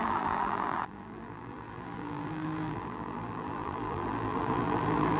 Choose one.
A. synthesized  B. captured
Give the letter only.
A